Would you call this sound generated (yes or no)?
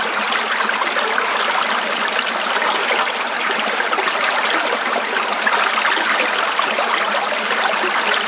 no